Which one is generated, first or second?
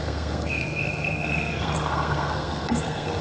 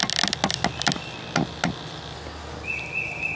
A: first